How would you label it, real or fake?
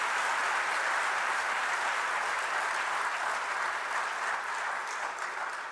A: real